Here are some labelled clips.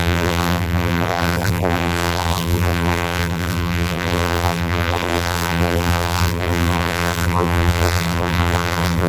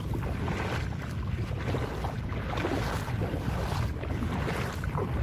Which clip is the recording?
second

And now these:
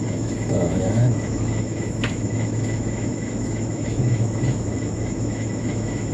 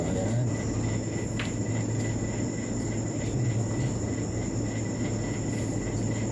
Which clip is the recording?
second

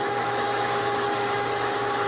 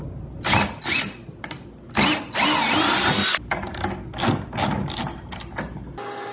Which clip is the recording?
second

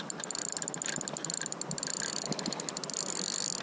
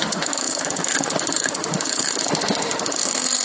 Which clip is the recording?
first